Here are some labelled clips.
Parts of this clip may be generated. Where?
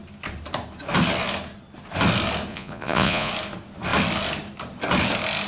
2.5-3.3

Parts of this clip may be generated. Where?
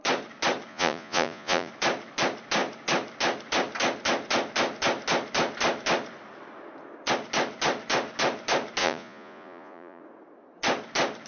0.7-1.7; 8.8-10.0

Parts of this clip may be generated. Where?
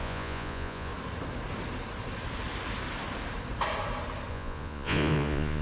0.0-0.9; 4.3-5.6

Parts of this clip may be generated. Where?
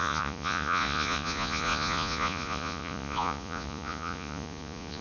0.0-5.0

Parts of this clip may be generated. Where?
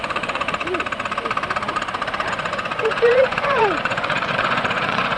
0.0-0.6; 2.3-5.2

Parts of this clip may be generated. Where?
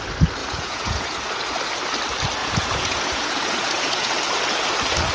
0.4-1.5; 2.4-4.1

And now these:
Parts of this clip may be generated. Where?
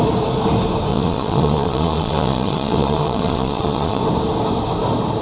0.9-4.0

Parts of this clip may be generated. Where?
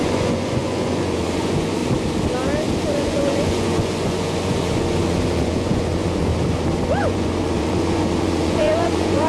0.0-1.8; 3.0-6.3; 7.0-9.3